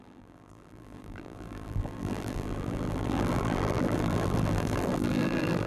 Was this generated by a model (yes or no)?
yes